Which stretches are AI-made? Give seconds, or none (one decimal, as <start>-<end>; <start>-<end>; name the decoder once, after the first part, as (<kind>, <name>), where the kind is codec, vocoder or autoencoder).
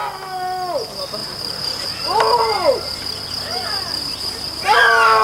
1.2-1.9 (vocoder, BigVGAN v2)